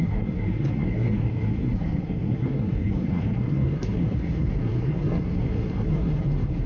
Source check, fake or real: fake